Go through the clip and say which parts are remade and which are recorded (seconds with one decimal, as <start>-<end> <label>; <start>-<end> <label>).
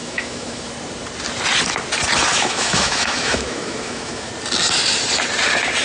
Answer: 0.0-0.7 remade; 0.7-2.3 recorded; 2.3-4.3 remade; 4.3-5.8 recorded